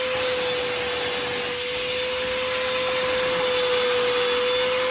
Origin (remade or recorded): recorded